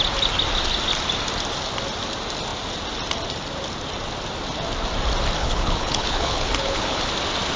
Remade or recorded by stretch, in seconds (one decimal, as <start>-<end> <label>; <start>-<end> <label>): 0.0-5.4 recorded; 5.4-7.1 remade; 7.1-7.6 recorded